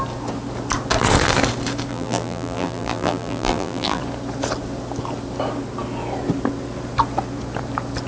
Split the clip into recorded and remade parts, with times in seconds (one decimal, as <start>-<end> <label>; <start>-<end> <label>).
0.0-1.9 recorded; 1.9-4.0 remade; 4.0-8.1 recorded